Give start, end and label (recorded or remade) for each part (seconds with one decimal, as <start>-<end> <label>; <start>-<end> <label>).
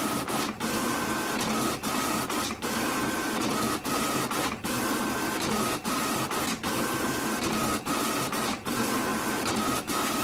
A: 0.0-10.2 recorded